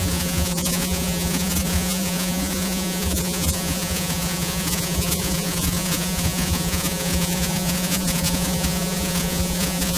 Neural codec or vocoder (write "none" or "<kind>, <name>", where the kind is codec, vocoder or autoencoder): vocoder, Vocos